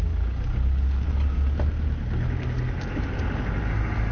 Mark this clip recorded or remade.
recorded